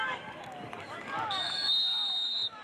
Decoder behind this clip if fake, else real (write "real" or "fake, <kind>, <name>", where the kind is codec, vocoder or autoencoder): fake, codec, DAC